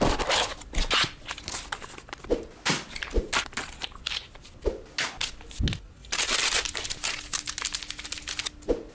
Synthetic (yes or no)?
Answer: no